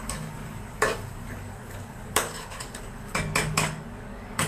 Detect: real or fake fake